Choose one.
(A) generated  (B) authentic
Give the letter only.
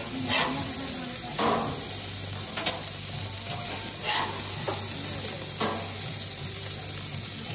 B